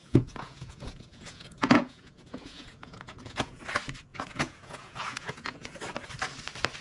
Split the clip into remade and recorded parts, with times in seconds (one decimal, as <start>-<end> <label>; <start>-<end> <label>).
0.0-3.6 remade; 3.6-4.1 recorded; 4.1-5.8 remade; 5.8-6.8 recorded